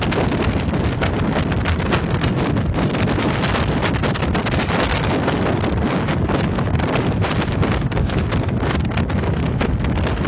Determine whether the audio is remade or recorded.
recorded